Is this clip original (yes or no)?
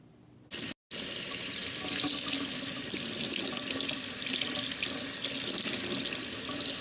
yes